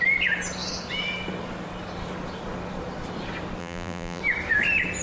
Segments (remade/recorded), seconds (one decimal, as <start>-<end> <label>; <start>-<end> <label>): 0.0-3.6 recorded; 3.6-4.2 remade; 4.2-5.0 recorded

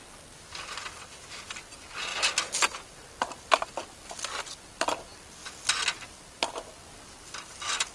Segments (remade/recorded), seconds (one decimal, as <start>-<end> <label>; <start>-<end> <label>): 0.0-7.9 recorded

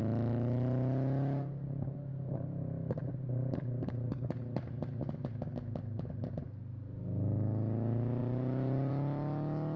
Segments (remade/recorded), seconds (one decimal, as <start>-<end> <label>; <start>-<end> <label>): 0.0-2.1 recorded; 2.1-4.1 remade; 4.1-8.2 recorded; 8.2-8.9 remade; 8.9-9.8 recorded

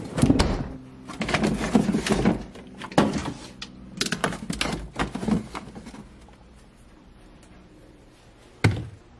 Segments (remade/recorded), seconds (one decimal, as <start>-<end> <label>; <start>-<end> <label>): 0.0-9.2 recorded

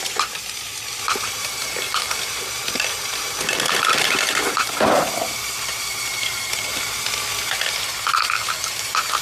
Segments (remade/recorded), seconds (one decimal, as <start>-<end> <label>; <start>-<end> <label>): 0.0-0.7 remade; 0.7-1.2 recorded; 1.2-6.7 remade; 6.7-7.5 recorded; 7.5-9.2 remade

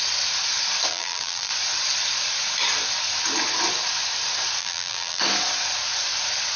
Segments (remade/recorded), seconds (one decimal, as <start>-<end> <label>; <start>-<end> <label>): 0.0-0.9 recorded; 0.9-1.5 remade; 1.5-4.6 recorded; 4.6-5.2 remade; 5.2-6.6 recorded

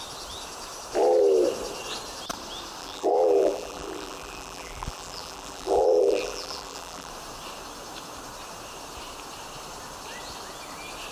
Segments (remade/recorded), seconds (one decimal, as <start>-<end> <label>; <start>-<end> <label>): 0.0-2.8 recorded; 2.8-7.1 remade; 7.1-11.1 recorded